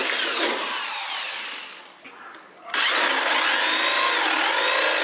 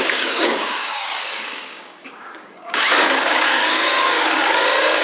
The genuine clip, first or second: first